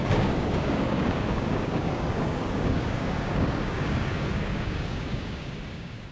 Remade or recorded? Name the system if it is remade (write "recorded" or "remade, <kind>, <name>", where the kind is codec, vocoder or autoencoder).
remade, codec, DAC